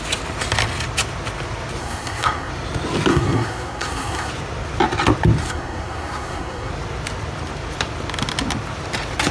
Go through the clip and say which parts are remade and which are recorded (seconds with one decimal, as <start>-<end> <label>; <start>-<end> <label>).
0.0-1.8 recorded; 1.8-2.5 remade; 2.5-3.1 recorded; 3.1-4.3 remade; 4.3-5.4 recorded; 5.4-6.7 remade; 6.7-9.3 recorded